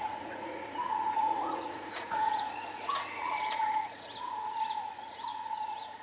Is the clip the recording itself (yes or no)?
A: no